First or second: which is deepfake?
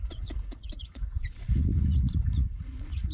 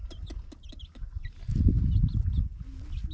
first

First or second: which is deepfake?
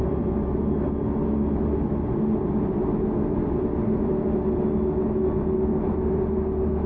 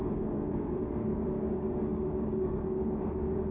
second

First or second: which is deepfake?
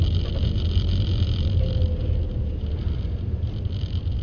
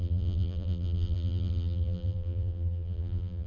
second